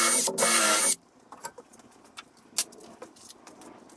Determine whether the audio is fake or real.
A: real